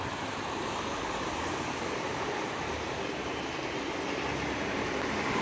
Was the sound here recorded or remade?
recorded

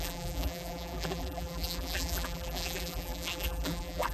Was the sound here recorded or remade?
remade